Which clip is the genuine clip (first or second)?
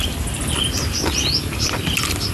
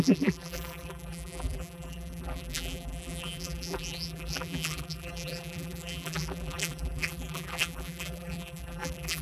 first